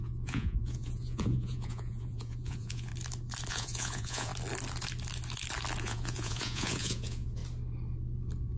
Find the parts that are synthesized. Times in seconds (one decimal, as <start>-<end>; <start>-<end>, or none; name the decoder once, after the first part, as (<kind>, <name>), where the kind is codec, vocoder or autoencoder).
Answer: 0.0-2.9 (vocoder, Vocos); 3.5-4.3; 5.8-7.4